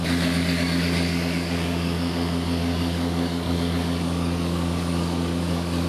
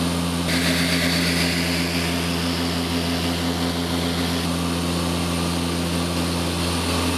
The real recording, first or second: second